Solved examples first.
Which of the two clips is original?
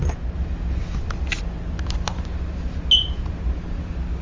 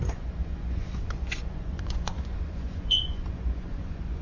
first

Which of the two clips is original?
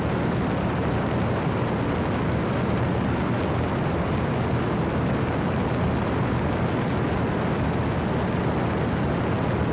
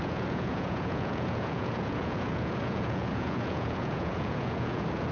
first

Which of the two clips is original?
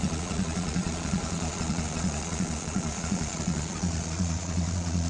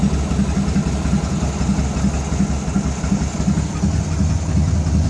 second